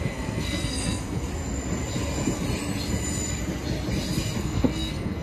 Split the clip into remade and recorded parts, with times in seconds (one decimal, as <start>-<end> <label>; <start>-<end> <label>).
0.0-1.3 remade; 1.3-4.4 recorded; 4.4-5.2 remade